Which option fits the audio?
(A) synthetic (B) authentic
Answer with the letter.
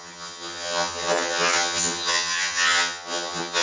A